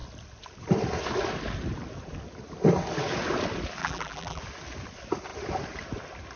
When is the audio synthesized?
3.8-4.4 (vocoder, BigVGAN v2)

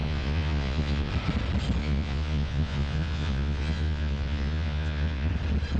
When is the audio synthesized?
0.0-1.1 (vocoder, Vocos); 1.8-5.3

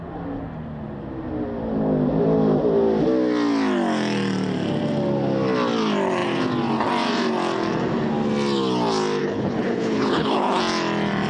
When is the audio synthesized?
9.2-10.6 (codec, HILCodec)

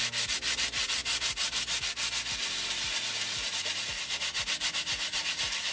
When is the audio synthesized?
none